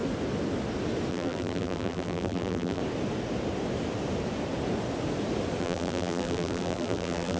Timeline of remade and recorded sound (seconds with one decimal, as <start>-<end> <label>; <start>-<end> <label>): 0.0-1.1 recorded; 1.1-2.8 remade; 2.8-5.6 recorded; 5.6-7.4 remade